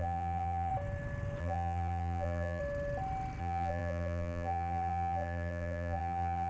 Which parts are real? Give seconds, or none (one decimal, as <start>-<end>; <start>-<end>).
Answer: 0.7-1.4; 2.6-3.4